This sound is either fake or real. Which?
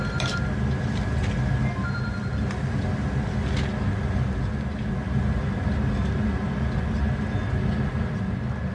real